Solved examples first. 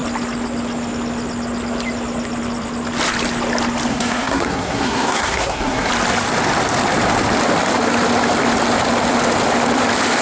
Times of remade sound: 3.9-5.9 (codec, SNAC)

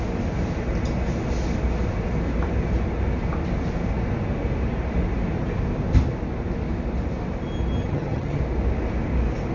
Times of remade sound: 7.8-8.4 (vocoder, HiFi-GAN)

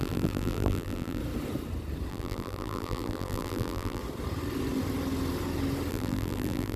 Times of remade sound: 0.0-1.2 (vocoder, BigVGAN v2); 2.1-4.0; 5.9-6.8

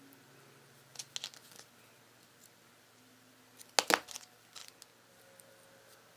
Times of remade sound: none

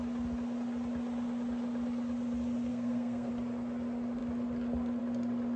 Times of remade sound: 2.7-3.3 (codec, SNAC)

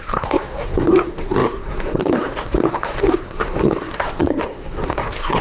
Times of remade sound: 0.0-5.4 (codec, SNAC)